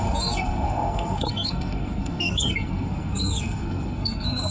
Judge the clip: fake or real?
fake